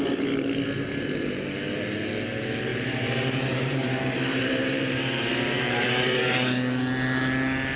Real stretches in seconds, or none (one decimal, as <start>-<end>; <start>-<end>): 0.0-2.7; 5.9-7.8